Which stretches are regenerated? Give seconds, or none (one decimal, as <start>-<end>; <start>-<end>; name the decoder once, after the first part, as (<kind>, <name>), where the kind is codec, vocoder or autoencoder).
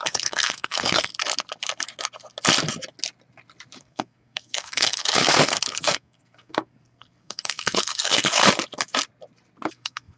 0.0-1.1 (codec, SNAC); 3.8-8.4; 9.7-10.2